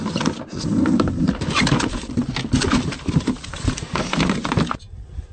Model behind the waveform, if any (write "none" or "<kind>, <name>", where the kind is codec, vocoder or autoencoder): none